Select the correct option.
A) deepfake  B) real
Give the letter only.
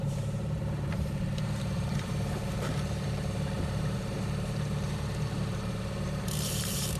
A